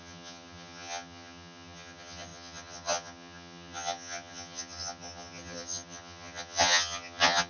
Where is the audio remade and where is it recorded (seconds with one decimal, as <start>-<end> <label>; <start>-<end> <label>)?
0.0-7.5 remade